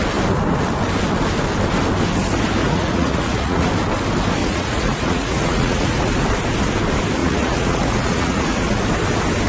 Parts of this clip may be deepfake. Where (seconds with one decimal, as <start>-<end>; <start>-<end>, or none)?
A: 2.6-3.7; 4.4-6.1; 7.2-8.8

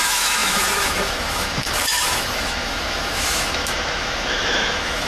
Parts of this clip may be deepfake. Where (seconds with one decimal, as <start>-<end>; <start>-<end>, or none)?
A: 0.0-5.1

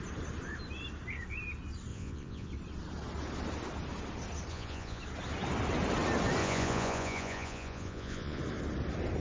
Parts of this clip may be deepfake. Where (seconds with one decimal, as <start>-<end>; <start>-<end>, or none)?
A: 1.9-2.5; 4.5-5.0; 6.4-8.4